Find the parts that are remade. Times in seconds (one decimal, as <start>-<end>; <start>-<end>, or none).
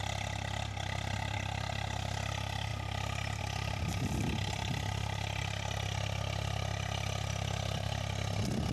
none